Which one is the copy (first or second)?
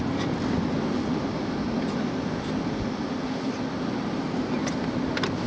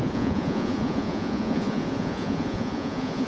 second